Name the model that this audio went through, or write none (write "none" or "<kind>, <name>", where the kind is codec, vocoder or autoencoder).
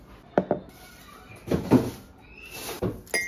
none